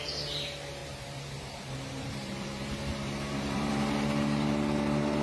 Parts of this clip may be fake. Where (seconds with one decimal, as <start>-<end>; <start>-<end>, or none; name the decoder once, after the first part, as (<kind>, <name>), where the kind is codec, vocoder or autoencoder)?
0.8-3.7 (vocoder, BigVGAN v2)